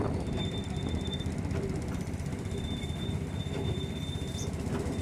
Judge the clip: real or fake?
fake